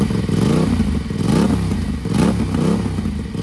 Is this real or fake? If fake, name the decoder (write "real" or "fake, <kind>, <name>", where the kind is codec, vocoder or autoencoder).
real